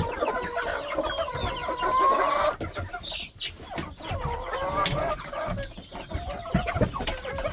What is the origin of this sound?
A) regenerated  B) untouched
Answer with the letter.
B